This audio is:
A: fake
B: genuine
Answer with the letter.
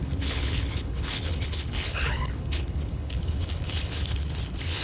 A